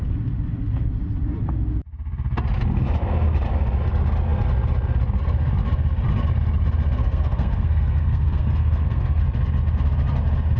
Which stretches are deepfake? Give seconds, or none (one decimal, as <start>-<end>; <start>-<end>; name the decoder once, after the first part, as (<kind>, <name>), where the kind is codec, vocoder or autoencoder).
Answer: 7.0-9.2 (codec, SNAC)